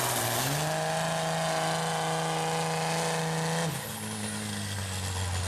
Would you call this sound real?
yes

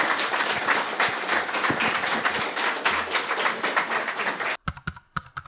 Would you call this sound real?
yes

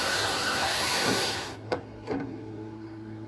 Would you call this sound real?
no